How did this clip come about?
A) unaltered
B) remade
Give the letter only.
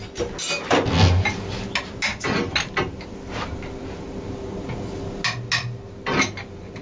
A